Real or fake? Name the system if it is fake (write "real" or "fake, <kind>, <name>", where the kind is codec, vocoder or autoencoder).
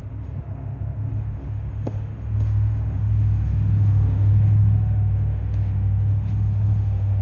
fake, autoencoder, DAC-VAE